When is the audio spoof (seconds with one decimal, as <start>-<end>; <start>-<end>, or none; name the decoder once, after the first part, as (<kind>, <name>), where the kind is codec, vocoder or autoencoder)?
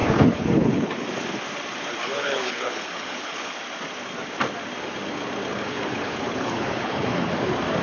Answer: 0.0-0.9 (codec, HILCodec); 2.0-3.6; 5.5-7.3